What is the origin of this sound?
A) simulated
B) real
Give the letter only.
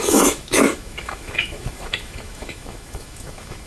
A